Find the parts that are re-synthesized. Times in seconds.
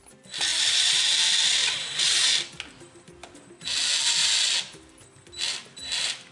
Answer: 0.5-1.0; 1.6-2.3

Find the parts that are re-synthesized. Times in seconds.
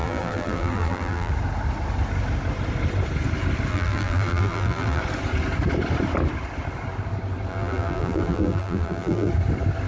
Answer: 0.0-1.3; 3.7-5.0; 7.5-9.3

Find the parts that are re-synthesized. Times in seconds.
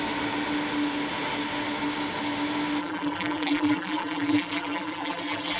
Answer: 2.8-5.6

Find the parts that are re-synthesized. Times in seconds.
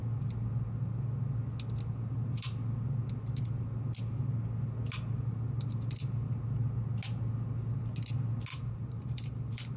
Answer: 8.5-9.8